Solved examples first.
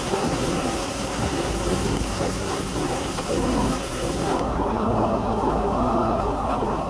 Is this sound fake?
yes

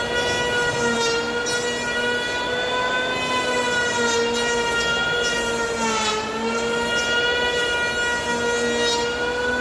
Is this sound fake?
no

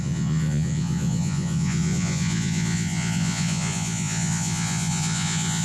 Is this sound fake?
yes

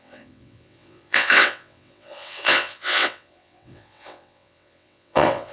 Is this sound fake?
yes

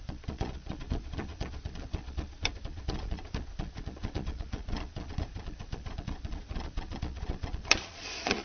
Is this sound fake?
yes